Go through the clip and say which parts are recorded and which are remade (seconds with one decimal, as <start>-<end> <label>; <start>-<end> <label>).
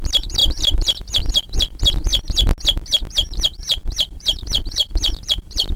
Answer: 0.0-2.1 remade; 2.1-3.1 recorded; 3.1-5.8 remade